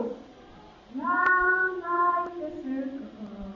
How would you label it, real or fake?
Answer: real